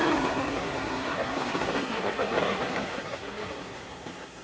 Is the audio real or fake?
fake